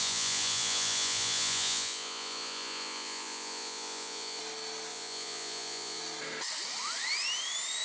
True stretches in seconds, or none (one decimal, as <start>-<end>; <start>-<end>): 4.4-4.9; 6.0-7.8